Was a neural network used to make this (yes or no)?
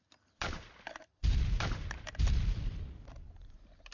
yes